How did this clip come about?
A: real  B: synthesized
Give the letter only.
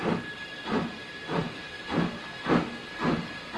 A